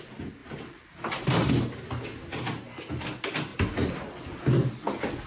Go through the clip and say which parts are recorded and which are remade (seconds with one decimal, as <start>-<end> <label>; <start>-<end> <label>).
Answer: 0.0-0.4 recorded; 0.4-1.5 remade; 1.5-5.3 recorded

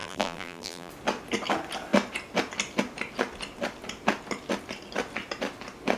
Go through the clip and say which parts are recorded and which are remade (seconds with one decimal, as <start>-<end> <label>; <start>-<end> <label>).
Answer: 0.0-0.9 remade; 0.9-6.0 recorded

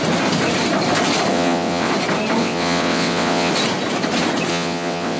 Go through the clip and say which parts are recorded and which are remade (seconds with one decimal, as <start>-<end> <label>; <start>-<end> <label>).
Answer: 0.0-1.3 recorded; 1.3-1.9 remade; 1.9-2.4 recorded; 2.4-3.5 remade; 3.5-4.5 recorded; 4.5-5.2 remade